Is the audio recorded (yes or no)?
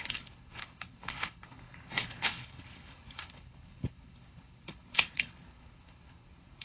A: no